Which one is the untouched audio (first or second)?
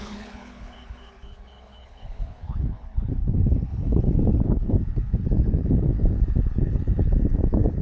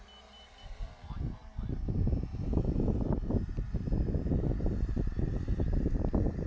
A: second